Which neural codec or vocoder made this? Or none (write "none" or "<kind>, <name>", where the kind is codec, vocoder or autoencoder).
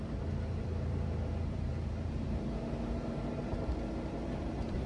vocoder, BigVGAN v2